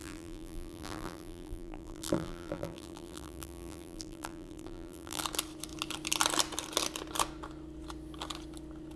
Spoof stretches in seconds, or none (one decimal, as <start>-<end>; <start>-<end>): 0.0-5.2